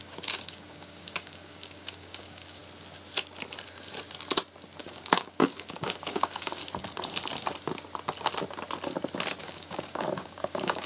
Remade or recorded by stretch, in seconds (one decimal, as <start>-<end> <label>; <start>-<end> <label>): 0.0-2.6 remade; 2.6-4.8 recorded; 4.8-6.6 remade; 6.6-9.4 recorded; 9.4-10.9 remade